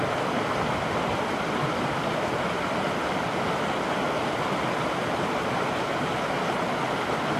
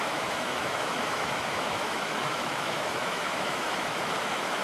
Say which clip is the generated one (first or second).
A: second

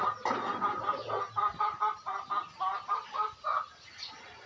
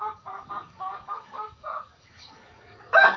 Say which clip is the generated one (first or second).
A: second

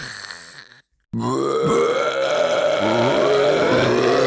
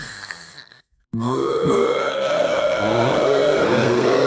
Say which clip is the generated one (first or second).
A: second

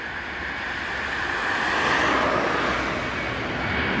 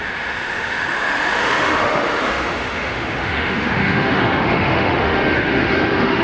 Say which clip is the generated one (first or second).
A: second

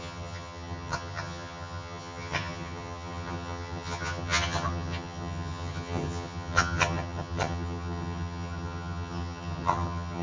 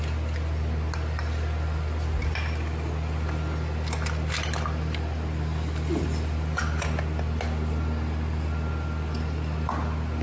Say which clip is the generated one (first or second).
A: first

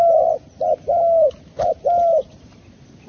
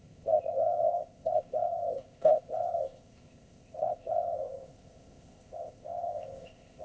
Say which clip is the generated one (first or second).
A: second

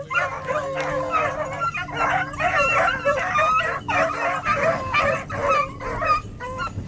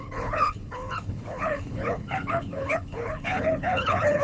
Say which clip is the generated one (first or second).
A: second